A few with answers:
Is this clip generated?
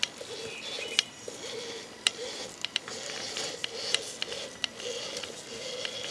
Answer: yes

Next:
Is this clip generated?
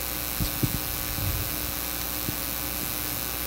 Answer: no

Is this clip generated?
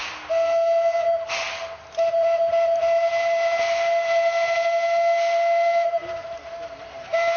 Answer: no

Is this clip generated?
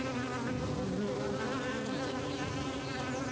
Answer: no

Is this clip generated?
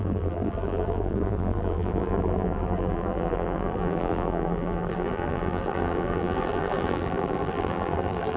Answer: yes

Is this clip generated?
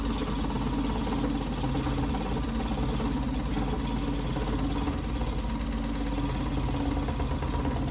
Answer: no